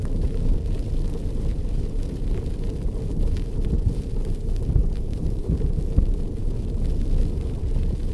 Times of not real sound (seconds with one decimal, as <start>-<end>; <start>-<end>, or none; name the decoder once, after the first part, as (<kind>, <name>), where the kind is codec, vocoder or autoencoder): 1.5-2.2 (vocoder, BigVGAN v2); 4.8-5.5